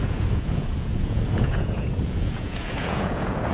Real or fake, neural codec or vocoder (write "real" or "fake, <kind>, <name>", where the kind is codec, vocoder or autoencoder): fake, vocoder, Vocos